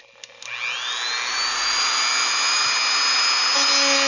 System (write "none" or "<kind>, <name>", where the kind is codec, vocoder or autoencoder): none